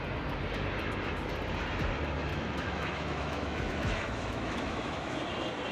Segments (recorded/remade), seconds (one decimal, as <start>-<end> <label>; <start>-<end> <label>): 0.0-2.3 recorded; 2.3-5.2 remade; 5.2-5.7 recorded